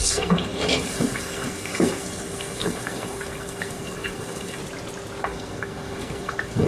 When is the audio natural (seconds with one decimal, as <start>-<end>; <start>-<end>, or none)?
4.6-5.2